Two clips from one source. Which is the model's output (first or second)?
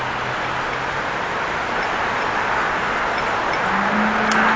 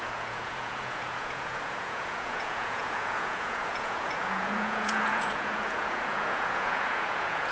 second